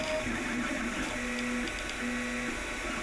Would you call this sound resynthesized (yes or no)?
no